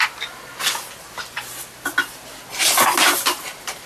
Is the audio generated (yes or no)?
no